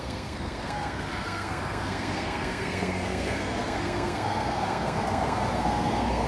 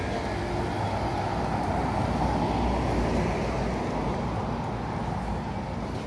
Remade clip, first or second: first